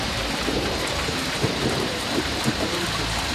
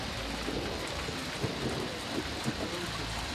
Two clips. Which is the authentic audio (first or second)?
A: second